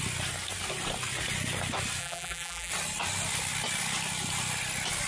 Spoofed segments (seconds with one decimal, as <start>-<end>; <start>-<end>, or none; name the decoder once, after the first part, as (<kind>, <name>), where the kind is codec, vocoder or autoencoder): 2.0-2.7 (vocoder, BigVGAN v2)